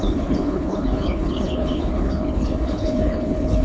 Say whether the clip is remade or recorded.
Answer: remade